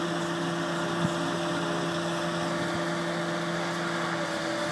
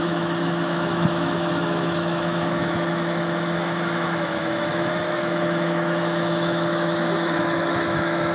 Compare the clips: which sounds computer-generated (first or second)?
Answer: second